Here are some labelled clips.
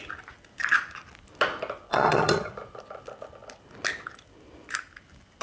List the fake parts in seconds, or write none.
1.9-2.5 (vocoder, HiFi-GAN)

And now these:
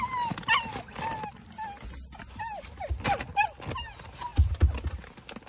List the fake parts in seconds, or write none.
none

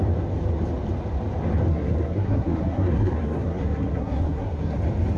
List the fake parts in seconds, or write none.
1.7-4.8 (codec, SNAC)

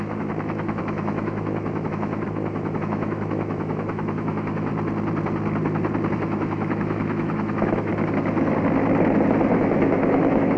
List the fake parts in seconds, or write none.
0.0-4.7 (autoencoder, DAC-VAE); 6.1-7.9; 9.6-10.6

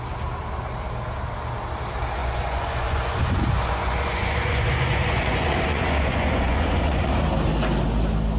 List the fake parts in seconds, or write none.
2.2-7.1 (vocoder, Vocos)

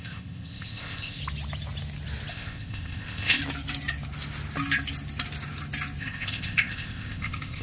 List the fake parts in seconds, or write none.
0.0-1.2 (codec, ZipCodec); 2.3-3.4; 6.0-7.6

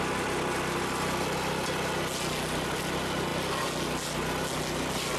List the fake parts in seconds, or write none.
none

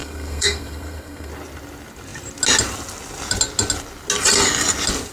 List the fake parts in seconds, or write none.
0.0-1.3 (codec, SNAC)